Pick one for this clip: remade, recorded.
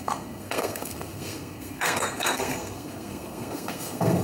remade